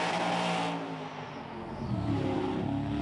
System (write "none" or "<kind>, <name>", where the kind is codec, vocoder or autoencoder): none